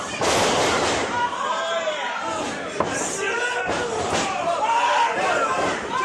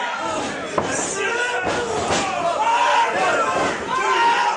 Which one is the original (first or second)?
second